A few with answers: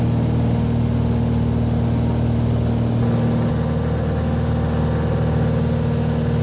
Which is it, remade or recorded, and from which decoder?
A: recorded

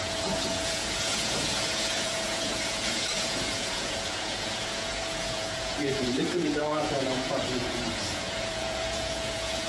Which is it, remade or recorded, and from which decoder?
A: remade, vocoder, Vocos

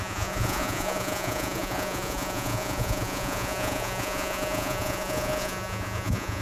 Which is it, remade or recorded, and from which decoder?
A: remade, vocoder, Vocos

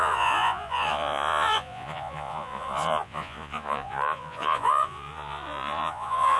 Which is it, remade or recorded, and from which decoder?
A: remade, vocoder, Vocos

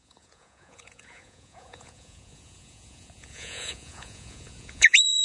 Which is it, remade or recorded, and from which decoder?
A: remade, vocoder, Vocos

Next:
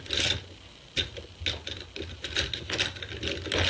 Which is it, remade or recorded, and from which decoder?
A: recorded